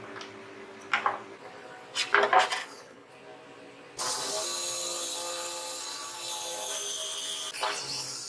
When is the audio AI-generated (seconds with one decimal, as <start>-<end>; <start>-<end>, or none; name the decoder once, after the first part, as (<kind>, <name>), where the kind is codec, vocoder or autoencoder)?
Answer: 2.6-3.1 (codec, HILCodec)